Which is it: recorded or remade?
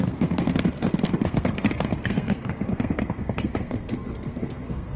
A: remade